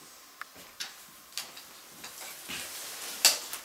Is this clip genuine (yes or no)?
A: yes